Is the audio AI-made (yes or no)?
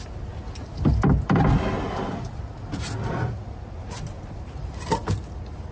no